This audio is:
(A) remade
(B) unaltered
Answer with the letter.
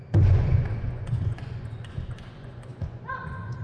A